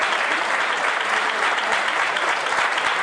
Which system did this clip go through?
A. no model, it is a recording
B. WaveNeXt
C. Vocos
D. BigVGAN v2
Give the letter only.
D